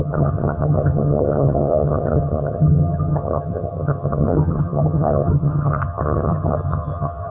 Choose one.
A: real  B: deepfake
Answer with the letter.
B